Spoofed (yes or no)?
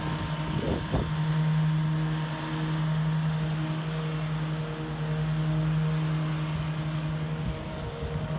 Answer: no